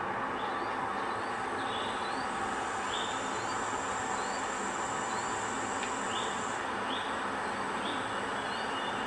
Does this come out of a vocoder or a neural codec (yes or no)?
no